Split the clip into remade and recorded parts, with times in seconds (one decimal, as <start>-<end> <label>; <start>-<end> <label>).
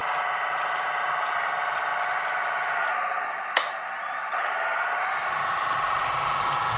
0.0-1.1 remade; 1.1-6.8 recorded